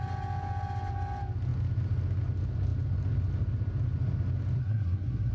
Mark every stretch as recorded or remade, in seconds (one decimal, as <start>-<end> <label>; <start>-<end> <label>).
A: 0.0-4.6 recorded; 4.6-5.3 remade